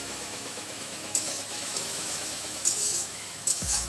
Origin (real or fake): fake